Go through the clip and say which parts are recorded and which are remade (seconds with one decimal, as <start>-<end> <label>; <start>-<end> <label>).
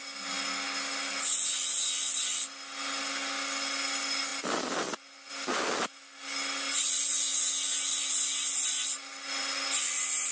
0.0-10.3 recorded